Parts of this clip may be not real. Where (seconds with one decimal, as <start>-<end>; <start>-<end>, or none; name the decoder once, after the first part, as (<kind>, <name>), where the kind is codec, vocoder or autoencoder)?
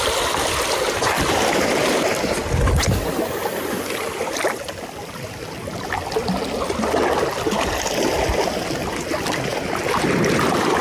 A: none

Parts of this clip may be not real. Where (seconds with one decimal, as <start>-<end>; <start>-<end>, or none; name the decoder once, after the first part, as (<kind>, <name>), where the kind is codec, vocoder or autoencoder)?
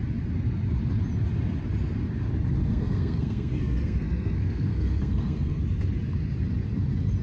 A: 2.6-5.6 (codec, SNAC)